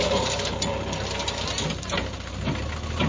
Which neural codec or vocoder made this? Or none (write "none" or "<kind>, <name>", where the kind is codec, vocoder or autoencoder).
none